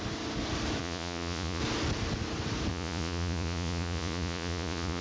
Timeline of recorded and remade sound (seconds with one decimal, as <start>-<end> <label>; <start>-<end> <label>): 0.0-0.8 recorded; 0.8-1.6 remade; 1.6-2.7 recorded; 2.7-5.0 remade